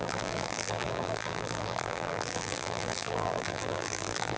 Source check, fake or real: fake